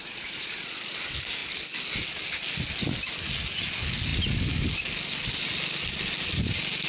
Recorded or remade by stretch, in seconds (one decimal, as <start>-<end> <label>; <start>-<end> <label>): 0.0-0.8 remade; 0.8-6.9 recorded